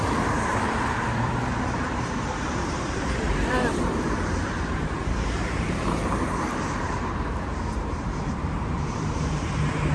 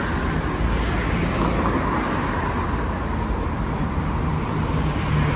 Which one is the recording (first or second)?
second